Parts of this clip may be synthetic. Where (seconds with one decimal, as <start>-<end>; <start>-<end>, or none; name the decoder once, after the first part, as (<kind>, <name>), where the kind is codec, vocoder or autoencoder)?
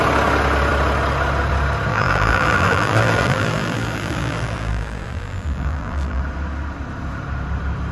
1.9-6.2 (vocoder, BigVGAN v2)